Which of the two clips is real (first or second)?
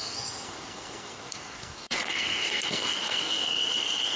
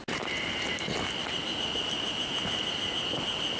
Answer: second